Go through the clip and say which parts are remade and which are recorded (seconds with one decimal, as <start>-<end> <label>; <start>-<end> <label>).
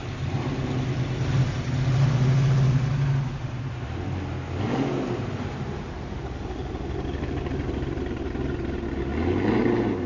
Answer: 0.0-10.1 recorded